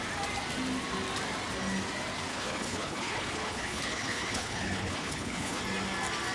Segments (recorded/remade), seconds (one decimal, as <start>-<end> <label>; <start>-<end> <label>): 0.0-2.3 recorded; 2.3-5.6 remade; 5.6-6.3 recorded